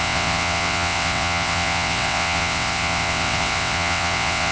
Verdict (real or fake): fake